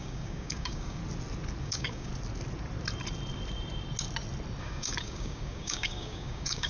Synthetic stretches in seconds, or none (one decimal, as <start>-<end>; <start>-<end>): 0.0-1.0; 1.6-2.1; 4.6-6.7